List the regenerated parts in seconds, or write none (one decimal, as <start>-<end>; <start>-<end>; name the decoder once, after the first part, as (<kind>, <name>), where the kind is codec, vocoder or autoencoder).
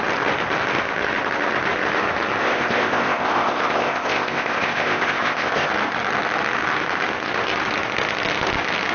2.4-5.7 (codec, ZipCodec)